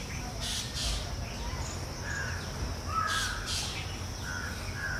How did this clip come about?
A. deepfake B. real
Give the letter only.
B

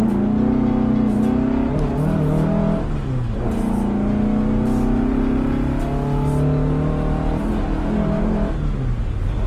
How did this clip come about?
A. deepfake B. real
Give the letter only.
B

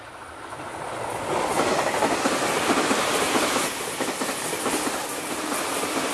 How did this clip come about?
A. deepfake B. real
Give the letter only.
B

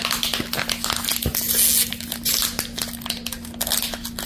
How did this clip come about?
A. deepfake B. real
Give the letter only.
B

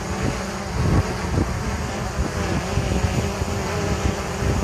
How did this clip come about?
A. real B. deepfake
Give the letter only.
A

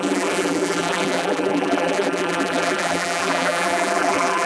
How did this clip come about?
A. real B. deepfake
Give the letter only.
B